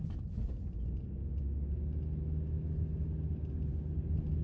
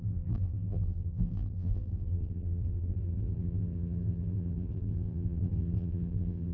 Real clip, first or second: first